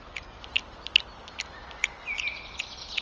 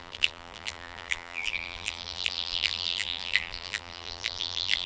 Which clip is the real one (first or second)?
first